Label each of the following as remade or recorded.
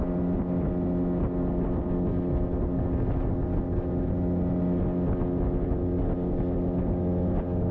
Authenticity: recorded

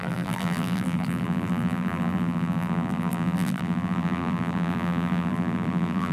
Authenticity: remade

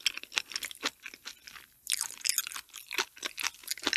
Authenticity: recorded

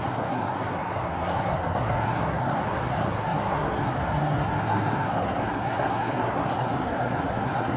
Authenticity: remade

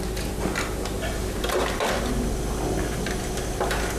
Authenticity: recorded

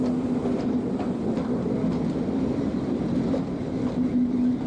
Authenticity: recorded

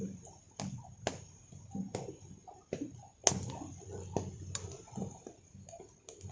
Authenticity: recorded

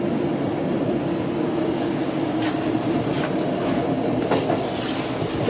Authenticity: remade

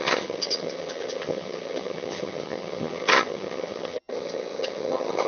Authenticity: remade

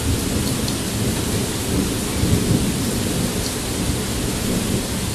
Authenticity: recorded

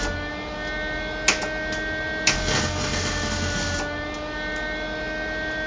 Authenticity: recorded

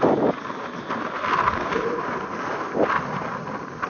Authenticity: recorded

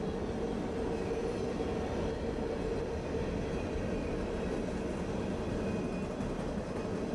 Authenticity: recorded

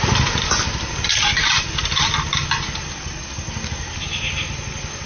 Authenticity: recorded